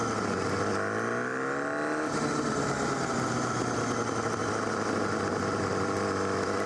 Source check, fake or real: real